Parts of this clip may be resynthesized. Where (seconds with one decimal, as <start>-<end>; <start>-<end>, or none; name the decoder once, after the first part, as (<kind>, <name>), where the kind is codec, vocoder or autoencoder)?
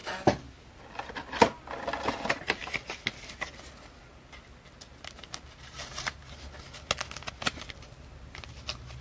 none